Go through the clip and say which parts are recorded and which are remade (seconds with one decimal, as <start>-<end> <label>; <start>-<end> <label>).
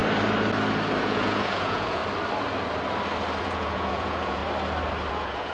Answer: 0.0-1.0 recorded; 1.0-2.0 remade; 2.0-3.4 recorded; 3.4-4.4 remade; 4.4-5.1 recorded; 5.1-5.5 remade